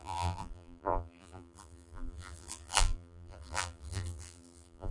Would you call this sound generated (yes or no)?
yes